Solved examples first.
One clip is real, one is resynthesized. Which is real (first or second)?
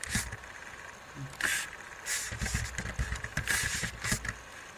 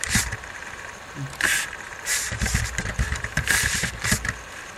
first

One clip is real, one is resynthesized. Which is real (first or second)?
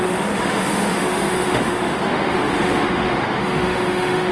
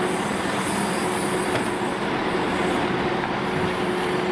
second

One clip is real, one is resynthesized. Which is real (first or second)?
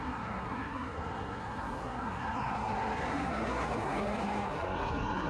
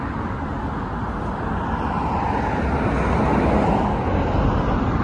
second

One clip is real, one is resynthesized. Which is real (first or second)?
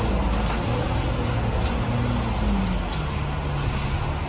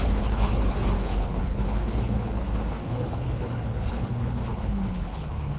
first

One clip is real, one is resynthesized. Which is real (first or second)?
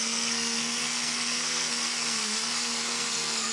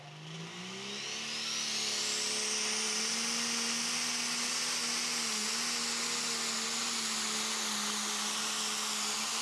second